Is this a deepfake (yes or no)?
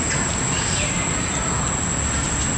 no